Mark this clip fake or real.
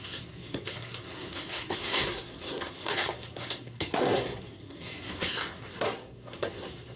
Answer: fake